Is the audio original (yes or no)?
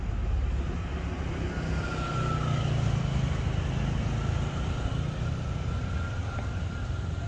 yes